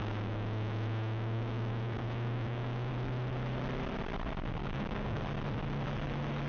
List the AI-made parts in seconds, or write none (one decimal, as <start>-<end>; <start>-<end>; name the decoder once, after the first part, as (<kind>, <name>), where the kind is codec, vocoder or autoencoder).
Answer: 0.0-2.9 (codec, DAC); 4.6-5.2